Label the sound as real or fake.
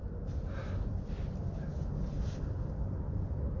real